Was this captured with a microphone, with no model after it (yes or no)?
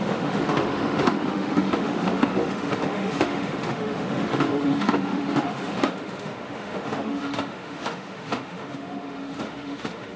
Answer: no